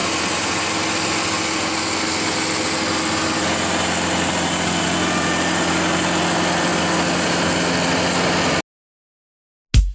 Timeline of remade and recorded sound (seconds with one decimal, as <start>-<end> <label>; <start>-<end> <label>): 0.0-9.9 recorded

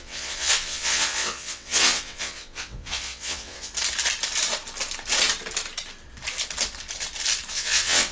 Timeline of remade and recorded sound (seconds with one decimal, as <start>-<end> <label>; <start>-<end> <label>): 0.0-3.7 remade; 3.7-7.5 recorded; 7.5-8.1 remade

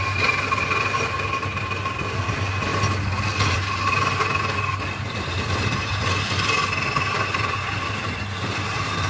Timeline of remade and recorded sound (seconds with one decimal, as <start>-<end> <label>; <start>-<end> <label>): 0.0-9.1 recorded

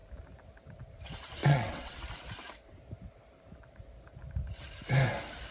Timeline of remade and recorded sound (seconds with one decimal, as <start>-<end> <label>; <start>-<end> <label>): 0.0-1.4 recorded; 1.4-2.0 remade; 2.0-5.5 recorded

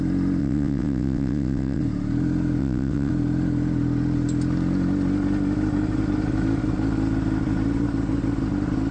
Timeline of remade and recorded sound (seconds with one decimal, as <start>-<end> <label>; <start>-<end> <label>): 0.0-0.4 recorded; 0.4-1.8 remade; 1.8-2.6 recorded; 2.6-3.1 remade; 3.1-8.9 recorded

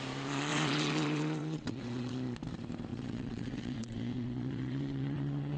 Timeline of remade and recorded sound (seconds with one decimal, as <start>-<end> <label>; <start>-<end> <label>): 0.0-0.5 recorded; 0.5-2.1 remade; 2.1-2.9 recorded; 2.9-5.6 remade